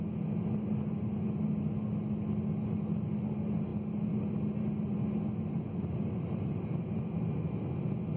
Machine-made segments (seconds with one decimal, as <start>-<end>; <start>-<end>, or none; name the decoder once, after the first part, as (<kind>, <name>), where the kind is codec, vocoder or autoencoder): none